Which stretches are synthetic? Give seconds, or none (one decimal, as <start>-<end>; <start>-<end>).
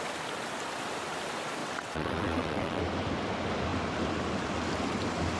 1.6-2.8